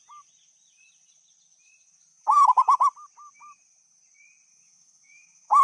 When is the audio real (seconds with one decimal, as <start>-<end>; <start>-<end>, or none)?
0.0-2.1; 2.8-4.5